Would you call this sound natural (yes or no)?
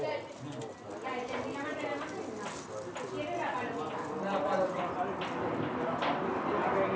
yes